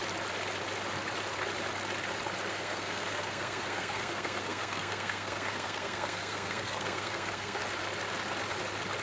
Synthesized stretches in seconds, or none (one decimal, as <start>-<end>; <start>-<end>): 2.5-7.6